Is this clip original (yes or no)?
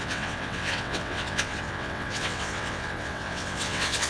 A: no